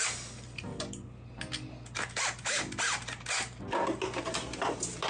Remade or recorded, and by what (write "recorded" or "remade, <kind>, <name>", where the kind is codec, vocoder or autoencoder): recorded